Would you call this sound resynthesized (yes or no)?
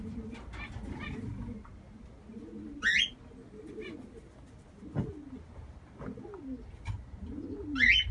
no